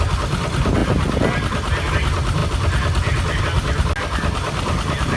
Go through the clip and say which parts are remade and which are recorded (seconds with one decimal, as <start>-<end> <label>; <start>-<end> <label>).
0.0-5.2 recorded